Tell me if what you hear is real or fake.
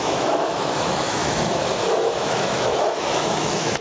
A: fake